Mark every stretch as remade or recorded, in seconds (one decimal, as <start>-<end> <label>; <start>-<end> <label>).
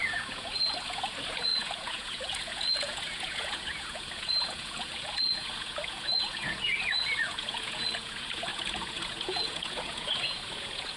0.0-11.0 remade